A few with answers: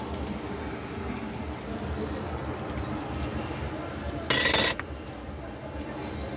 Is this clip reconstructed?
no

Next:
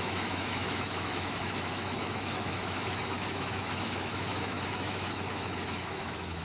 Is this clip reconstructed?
yes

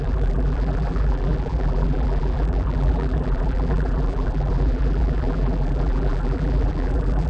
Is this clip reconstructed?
yes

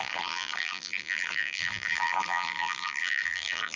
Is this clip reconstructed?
yes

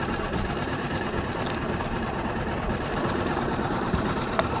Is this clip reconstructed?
yes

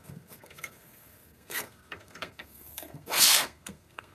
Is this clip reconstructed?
yes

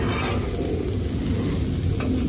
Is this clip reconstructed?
no